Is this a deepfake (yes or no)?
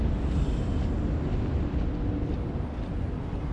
no